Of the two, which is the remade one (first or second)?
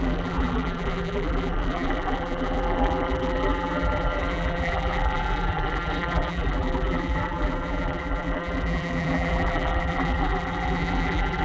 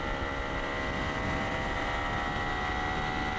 first